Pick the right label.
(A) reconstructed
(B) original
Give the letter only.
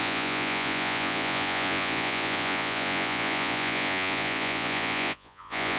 A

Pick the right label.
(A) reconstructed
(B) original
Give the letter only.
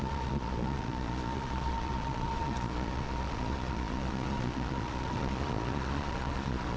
A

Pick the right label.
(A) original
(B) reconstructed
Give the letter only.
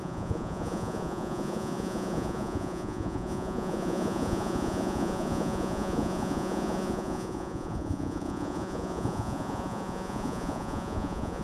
B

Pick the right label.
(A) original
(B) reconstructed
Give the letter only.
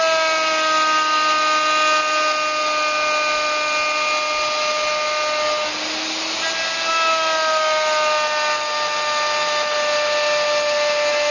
A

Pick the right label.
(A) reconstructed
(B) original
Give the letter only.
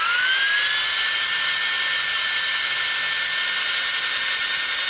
B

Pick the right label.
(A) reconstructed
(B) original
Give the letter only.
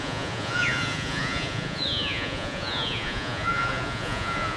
A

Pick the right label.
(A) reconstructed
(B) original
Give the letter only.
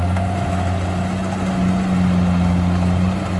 B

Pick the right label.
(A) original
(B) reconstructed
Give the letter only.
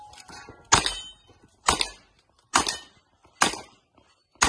A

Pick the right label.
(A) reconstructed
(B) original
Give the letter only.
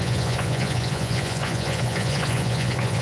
A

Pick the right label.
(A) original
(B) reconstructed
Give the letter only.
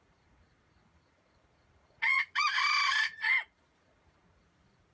B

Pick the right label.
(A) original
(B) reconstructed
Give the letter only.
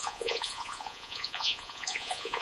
B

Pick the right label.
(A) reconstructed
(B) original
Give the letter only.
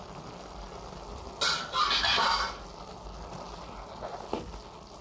B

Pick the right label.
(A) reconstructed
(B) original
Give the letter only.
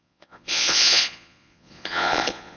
A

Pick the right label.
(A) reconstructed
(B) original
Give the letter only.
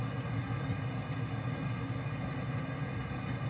B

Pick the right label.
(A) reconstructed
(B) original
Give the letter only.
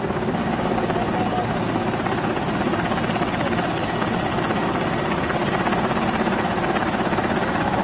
B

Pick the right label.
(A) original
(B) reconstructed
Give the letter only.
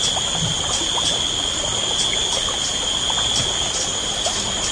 A